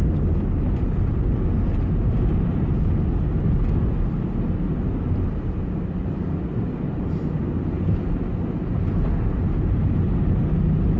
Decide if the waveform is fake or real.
real